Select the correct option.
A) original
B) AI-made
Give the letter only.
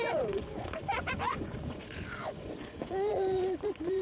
B